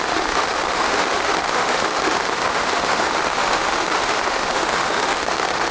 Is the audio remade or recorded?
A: remade